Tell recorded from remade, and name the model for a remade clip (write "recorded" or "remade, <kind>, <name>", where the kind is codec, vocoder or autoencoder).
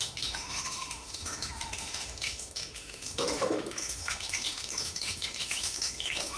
remade, autoencoder, DAC-VAE